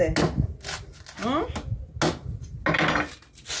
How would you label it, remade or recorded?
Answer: recorded